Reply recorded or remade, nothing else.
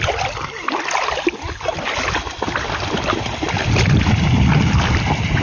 recorded